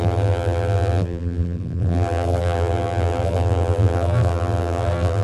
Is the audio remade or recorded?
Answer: remade